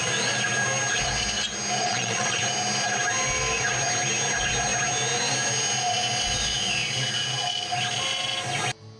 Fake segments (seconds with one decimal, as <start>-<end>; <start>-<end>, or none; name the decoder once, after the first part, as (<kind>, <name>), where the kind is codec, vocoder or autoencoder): 1.8-2.4 (vocoder, Vocos)